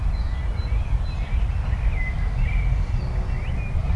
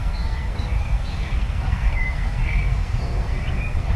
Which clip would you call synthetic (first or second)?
second